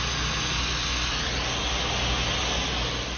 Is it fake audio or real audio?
real